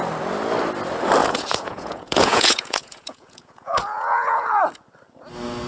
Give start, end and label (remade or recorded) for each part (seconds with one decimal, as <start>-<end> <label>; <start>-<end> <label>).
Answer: 0.0-1.2 recorded; 1.2-4.6 remade; 4.6-5.7 recorded